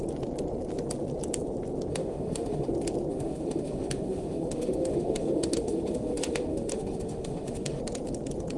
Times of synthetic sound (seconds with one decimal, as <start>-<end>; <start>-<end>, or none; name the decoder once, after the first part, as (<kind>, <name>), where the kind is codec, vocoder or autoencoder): 1.9-2.7 (autoencoder, DAC-VAE); 3.1-7.8

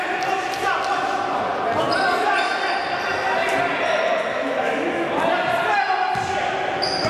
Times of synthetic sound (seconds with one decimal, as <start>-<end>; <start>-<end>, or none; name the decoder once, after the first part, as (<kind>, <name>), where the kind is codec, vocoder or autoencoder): 4.3-5.1 (autoencoder, DAC-VAE)

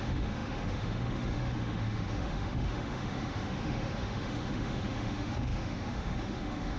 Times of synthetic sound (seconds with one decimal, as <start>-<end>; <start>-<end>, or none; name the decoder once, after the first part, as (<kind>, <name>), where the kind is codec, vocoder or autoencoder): 0.0-6.8 (autoencoder, DAC-VAE)

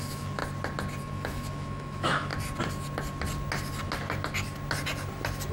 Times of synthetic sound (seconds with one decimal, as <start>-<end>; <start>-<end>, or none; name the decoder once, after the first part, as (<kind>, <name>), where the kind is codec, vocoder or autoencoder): 0.0-0.4 (autoencoder, DAC-VAE); 1.0-2.3

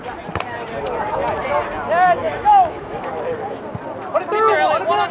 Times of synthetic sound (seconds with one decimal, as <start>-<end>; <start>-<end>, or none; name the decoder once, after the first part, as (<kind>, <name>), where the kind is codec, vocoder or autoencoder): 2.2-3.1 (autoencoder, DAC-VAE)

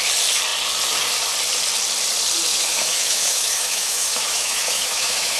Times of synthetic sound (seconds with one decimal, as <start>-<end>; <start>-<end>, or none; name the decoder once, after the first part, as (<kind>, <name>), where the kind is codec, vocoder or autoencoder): 2.5-5.4 (autoencoder, DAC-VAE)

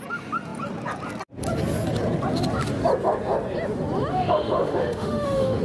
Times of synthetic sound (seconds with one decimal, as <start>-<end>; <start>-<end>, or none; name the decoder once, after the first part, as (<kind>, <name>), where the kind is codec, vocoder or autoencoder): 4.1-5.6 (autoencoder, DAC-VAE)

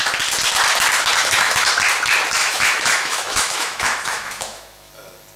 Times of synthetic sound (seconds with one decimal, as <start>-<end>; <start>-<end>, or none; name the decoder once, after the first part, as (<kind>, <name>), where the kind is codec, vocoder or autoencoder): 1.2-1.7 (autoencoder, DAC-VAE); 2.4-4.9